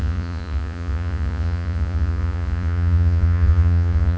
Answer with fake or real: fake